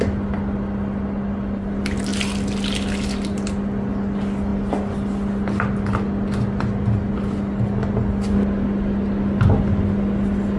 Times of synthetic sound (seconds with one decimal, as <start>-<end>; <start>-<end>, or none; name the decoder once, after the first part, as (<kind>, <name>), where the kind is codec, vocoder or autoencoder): none